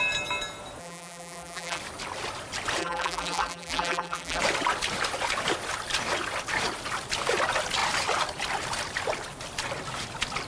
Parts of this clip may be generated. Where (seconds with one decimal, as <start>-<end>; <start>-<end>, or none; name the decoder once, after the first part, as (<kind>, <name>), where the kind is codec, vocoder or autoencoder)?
0.8-1.8 (vocoder, BigVGAN v2); 2.8-4.4